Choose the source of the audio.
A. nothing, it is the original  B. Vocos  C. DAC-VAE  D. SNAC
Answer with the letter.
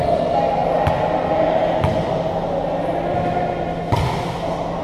A